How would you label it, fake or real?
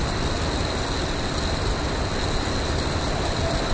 fake